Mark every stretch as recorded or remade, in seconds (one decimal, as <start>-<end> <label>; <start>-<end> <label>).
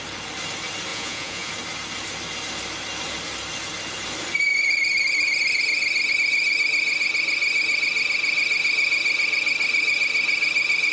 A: 0.0-0.9 recorded; 0.9-1.5 remade; 1.5-10.9 recorded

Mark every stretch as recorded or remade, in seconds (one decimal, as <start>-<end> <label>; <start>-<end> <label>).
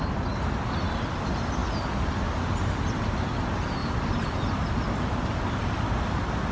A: 0.0-6.5 recorded